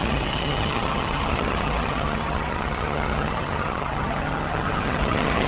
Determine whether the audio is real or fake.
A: fake